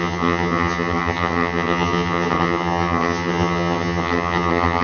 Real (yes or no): no